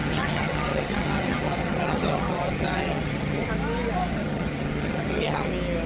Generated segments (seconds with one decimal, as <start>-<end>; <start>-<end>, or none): 0.0-3.5; 4.1-5.5